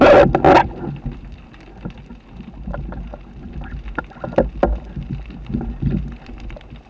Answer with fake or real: real